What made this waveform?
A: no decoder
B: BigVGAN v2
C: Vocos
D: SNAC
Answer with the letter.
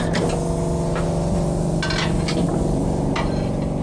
A